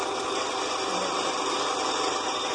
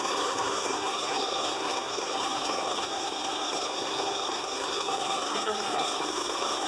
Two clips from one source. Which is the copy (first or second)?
second